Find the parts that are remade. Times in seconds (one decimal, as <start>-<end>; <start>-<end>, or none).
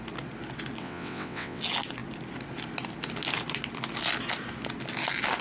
0.8-1.6